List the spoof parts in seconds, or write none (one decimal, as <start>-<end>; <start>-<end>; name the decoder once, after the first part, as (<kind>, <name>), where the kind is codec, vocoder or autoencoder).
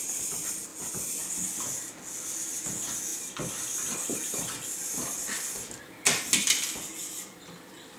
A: 3.1-5.8 (vocoder, BigVGAN v2); 7.0-8.0